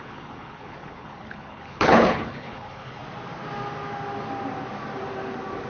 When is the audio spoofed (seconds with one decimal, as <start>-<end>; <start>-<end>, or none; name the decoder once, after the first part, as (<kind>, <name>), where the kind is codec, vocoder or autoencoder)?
0.0-3.0 (codec, HILCodec)

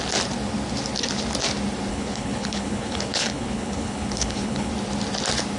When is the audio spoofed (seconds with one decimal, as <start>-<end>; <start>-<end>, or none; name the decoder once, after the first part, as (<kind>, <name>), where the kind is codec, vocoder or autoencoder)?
1.9-4.7 (codec, HILCodec)